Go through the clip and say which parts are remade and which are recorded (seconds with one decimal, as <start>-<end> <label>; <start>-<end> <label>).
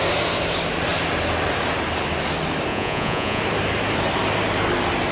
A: 0.0-2.7 recorded; 2.7-3.4 remade; 3.4-5.1 recorded